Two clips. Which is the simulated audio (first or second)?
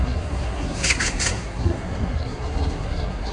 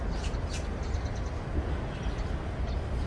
first